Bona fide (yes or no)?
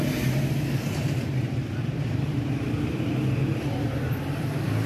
no